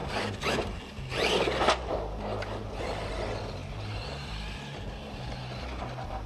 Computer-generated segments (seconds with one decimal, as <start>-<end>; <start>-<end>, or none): none